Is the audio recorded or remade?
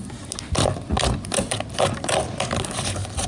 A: recorded